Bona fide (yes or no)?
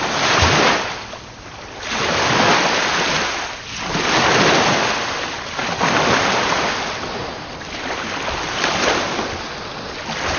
yes